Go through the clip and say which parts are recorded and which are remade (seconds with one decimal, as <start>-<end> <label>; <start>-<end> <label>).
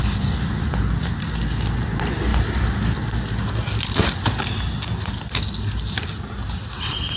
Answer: 0.0-7.2 recorded